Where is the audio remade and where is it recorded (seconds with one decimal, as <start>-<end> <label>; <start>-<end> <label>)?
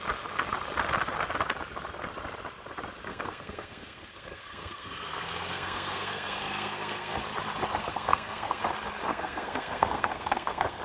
0.0-3.1 recorded; 3.1-7.2 remade; 7.2-7.8 recorded; 7.8-8.6 remade; 8.6-9.1 recorded; 9.1-10.8 remade